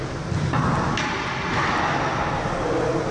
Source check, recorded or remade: recorded